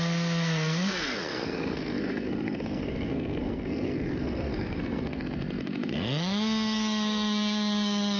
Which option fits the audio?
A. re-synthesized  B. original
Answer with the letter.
A